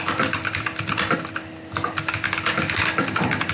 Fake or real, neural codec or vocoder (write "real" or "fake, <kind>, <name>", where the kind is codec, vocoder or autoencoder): real